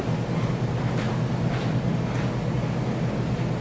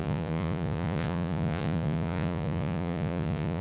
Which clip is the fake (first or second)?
second